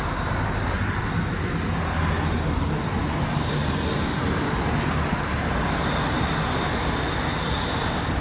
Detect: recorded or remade recorded